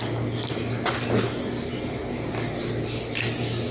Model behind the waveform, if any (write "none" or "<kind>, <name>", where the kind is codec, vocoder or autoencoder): none